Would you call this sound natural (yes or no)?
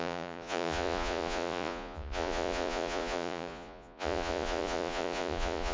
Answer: no